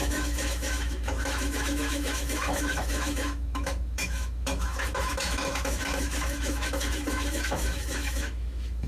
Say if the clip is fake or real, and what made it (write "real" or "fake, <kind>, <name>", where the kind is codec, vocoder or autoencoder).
fake, autoencoder, DAC-VAE